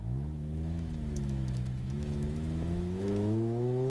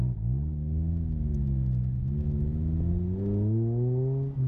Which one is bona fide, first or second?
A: second